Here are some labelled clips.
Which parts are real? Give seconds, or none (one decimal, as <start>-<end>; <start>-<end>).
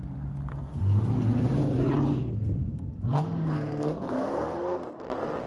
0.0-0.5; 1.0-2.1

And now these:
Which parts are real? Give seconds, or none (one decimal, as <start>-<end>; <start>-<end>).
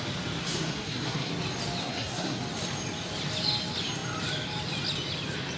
0.0-0.4; 1.3-1.8; 2.4-5.6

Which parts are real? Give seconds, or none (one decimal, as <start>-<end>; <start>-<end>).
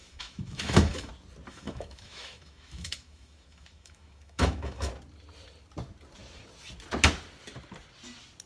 1.1-1.5; 4.9-8.5